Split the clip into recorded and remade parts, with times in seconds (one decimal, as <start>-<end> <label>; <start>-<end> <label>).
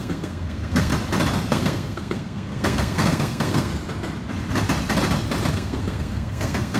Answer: 0.0-0.9 remade; 0.9-1.5 recorded; 1.5-3.7 remade; 3.7-5.5 recorded; 5.5-6.8 remade